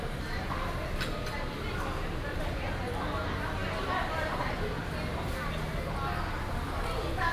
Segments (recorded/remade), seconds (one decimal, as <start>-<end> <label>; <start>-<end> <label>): 0.0-7.3 recorded